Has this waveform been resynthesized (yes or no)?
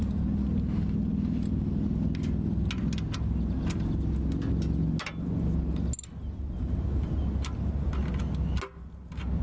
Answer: no